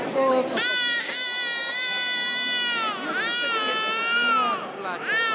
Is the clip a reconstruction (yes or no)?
no